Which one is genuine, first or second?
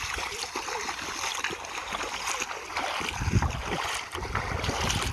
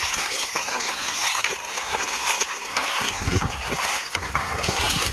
first